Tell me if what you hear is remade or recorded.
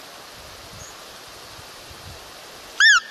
recorded